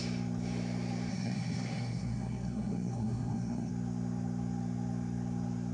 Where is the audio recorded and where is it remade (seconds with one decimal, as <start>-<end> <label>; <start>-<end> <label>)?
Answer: 0.0-1.1 recorded; 1.1-3.7 remade; 3.7-5.7 recorded